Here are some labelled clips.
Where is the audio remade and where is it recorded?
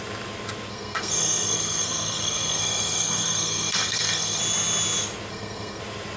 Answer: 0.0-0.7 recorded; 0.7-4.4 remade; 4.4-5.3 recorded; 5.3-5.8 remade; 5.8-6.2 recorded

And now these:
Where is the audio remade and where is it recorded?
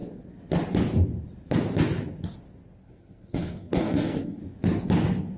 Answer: 0.0-2.8 recorded; 2.8-4.4 remade; 4.4-5.4 recorded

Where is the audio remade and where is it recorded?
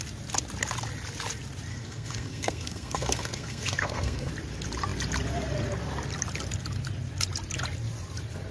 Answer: 0.0-1.7 recorded; 1.7-4.3 remade; 4.3-8.5 recorded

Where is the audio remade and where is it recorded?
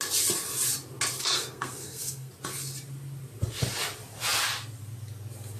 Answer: 0.0-1.2 recorded; 1.2-2.3 remade; 2.3-5.6 recorded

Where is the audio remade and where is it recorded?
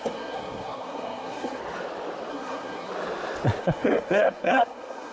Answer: 0.0-1.6 remade; 1.6-2.3 recorded; 2.3-2.9 remade; 2.9-3.6 recorded; 3.6-5.1 remade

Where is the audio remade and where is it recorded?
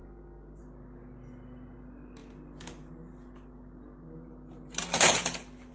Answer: 0.0-0.6 remade; 0.6-5.7 recorded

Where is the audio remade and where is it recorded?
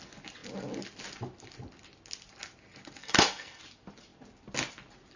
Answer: 0.0-3.0 recorded; 3.0-3.6 remade; 3.6-5.2 recorded